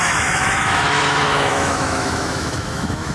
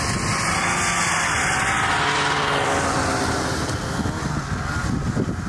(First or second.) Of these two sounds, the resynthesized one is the first